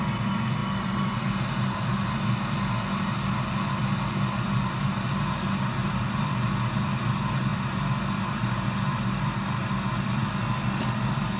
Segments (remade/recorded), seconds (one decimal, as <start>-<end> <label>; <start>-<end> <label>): 0.0-11.4 recorded